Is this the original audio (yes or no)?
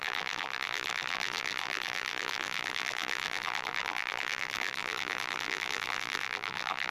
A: no